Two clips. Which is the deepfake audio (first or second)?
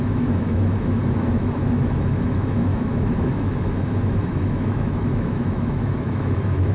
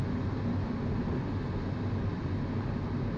first